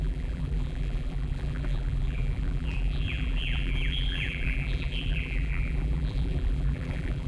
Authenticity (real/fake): fake